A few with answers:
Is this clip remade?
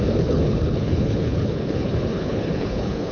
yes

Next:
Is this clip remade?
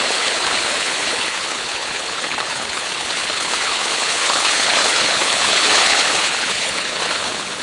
yes